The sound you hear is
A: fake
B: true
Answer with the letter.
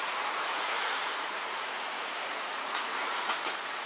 A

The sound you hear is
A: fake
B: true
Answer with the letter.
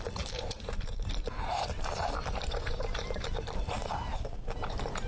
A